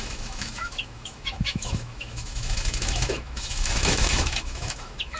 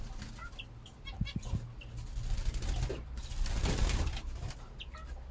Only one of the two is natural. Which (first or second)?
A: second